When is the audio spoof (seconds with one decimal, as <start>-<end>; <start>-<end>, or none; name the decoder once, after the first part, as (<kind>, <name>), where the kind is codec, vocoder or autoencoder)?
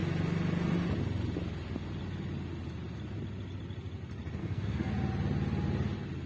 4.4-4.9 (codec, SNAC)